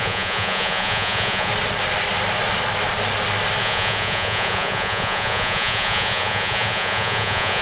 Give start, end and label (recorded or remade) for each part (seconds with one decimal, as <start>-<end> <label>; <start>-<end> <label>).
0.0-1.5 remade; 1.5-3.6 recorded; 3.6-7.6 remade